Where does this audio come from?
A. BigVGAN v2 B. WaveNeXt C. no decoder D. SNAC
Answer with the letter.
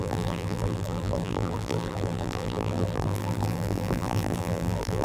A